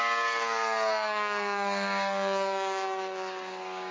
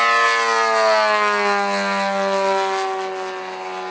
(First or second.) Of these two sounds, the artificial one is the first